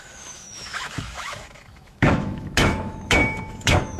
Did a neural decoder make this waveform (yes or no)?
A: yes